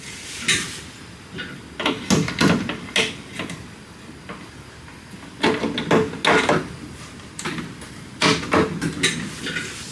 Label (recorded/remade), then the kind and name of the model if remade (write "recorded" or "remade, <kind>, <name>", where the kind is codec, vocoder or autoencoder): recorded